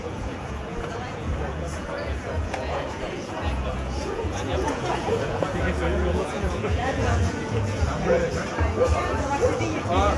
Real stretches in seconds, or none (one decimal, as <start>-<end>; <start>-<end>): 8.3-9.0